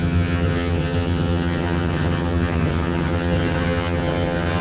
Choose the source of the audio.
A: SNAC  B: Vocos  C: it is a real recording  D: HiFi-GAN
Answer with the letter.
D